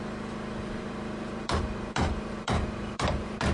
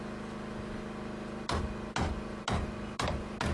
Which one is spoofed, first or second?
first